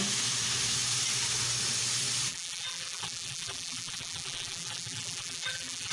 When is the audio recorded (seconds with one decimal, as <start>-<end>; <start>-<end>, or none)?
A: 0.0-2.3